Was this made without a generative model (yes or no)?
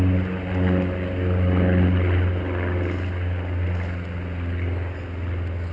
yes